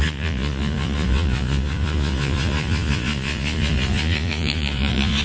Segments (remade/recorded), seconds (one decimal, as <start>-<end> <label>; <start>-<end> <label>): 0.0-5.2 remade